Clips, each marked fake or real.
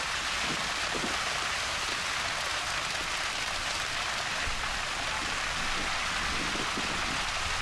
real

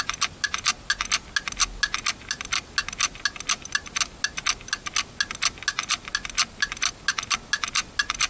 real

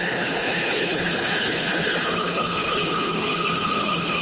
fake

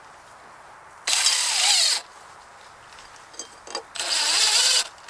real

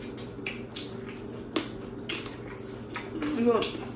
real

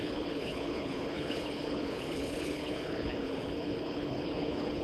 fake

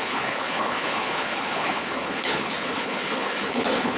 fake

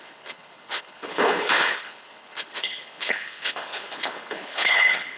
fake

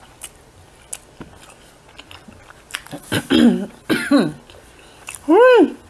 real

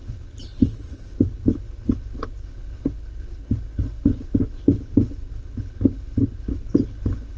fake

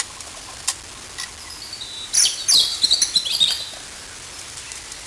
real